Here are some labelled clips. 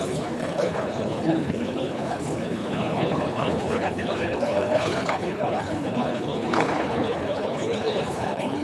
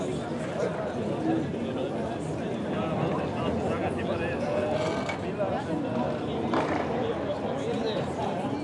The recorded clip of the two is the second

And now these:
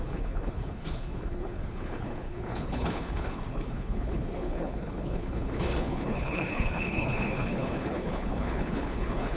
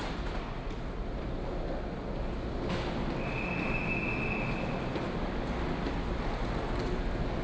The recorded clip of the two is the second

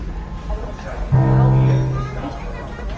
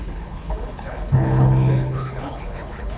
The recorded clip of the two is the first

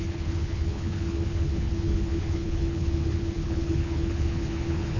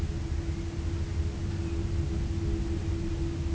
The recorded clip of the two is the second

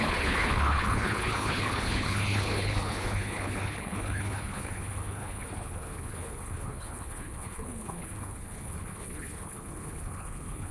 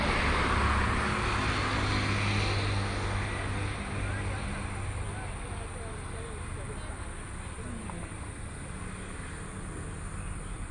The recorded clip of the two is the second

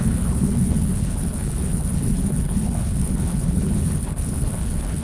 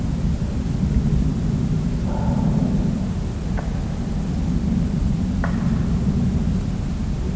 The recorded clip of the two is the second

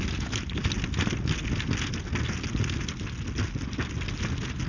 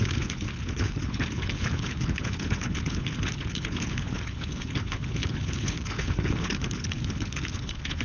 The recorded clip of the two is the first